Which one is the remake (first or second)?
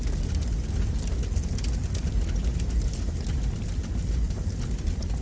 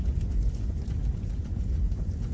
second